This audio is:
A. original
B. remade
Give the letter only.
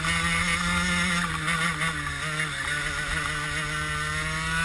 A